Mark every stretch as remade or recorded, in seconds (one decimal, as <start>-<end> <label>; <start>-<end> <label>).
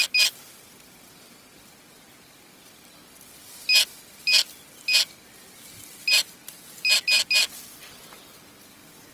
0.0-9.1 recorded